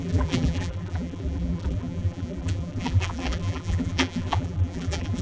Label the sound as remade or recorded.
remade